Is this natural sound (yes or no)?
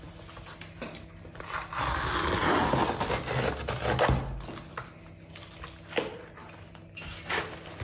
yes